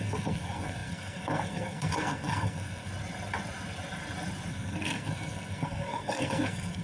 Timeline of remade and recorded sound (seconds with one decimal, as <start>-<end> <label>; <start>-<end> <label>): 0.0-2.9 remade; 2.9-4.5 recorded; 4.5-6.8 remade